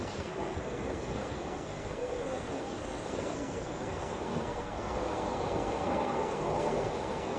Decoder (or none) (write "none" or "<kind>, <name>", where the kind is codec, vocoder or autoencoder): codec, SNAC